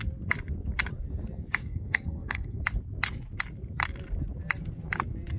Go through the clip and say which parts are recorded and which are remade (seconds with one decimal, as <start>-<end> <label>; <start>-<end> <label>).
0.0-1.6 recorded; 1.6-2.6 remade; 2.6-5.4 recorded